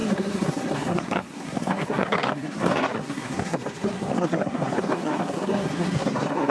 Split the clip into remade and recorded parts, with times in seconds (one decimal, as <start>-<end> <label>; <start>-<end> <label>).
0.0-6.5 remade